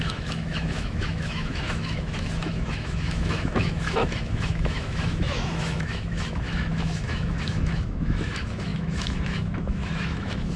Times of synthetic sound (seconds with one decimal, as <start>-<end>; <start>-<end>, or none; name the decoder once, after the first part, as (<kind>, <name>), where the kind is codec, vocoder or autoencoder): 0.0-10.6 (autoencoder, DAC-VAE)